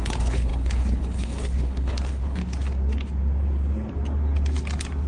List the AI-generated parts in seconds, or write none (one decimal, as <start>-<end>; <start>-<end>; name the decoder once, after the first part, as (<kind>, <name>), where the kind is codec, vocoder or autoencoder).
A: 0.0-2.4 (codec, HILCodec)